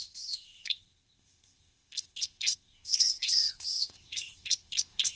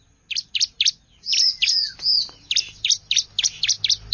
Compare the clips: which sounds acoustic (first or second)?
second